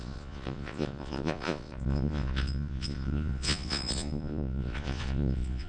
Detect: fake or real fake